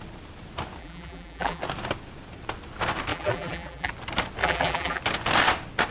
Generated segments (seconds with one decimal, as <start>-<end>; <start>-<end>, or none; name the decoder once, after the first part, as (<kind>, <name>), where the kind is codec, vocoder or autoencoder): 0.8-1.6 (vocoder, BigVGAN v2); 3.1-3.9; 4.4-5.0